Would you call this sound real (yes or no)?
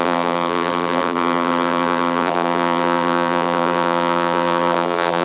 no